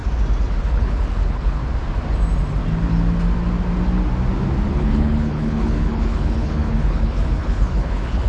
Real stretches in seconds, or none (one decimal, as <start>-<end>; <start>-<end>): 0.0-0.6; 1.6-4.7

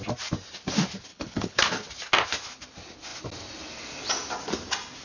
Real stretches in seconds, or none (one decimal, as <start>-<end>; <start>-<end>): 0.0-1.1; 1.6-5.0

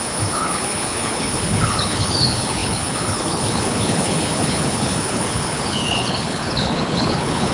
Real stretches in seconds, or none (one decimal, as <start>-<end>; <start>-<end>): none

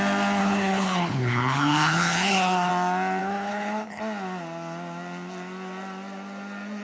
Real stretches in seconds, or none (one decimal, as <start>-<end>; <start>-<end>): 0.0-0.4; 2.7-3.2; 4.0-6.8